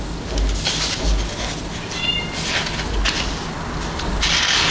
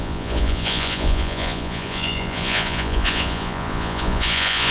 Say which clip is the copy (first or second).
second